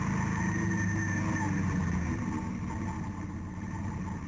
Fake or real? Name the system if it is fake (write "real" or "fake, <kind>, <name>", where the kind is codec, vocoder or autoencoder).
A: real